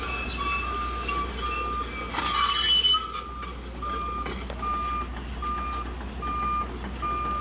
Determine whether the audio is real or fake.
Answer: real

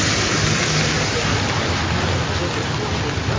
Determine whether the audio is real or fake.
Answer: real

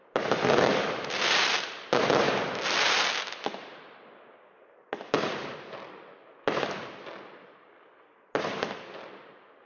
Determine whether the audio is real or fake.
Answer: real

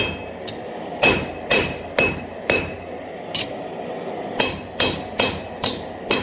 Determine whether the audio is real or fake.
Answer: real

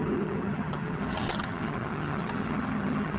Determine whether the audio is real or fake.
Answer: fake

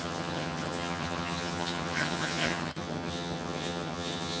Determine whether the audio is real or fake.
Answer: fake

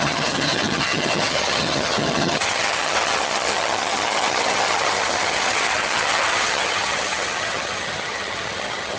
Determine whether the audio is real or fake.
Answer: fake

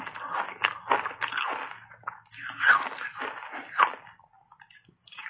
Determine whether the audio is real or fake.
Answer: real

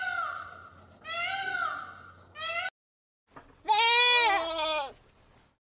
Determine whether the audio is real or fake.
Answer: real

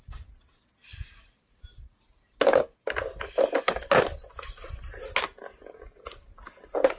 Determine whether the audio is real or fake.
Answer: real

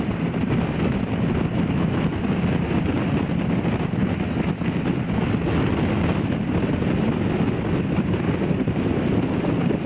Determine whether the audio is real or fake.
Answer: real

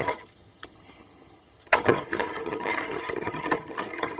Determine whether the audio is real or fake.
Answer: fake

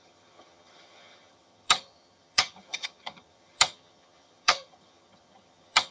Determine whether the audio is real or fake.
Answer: fake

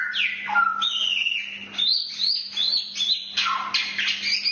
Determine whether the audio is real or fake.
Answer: real